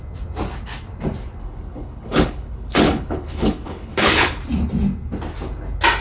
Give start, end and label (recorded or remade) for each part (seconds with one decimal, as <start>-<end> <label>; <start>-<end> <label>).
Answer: 0.0-1.4 recorded; 1.4-4.4 remade; 4.4-6.0 recorded